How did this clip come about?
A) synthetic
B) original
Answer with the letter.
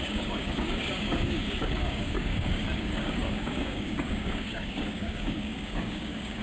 A